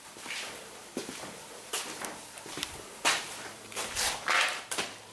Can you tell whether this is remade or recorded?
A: remade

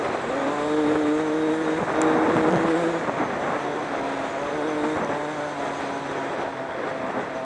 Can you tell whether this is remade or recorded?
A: recorded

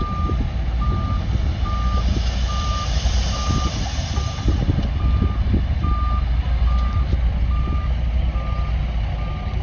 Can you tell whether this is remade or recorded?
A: recorded